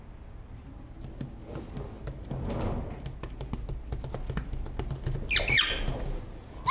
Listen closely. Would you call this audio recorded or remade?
recorded